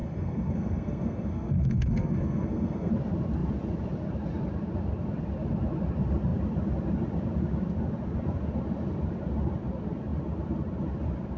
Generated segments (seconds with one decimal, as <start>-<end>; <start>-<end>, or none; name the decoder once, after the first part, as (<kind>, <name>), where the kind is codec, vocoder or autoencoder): 0.0-2.9 (codec, SNAC)